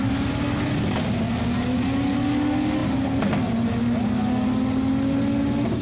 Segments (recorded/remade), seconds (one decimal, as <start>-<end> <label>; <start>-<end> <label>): 0.0-5.8 recorded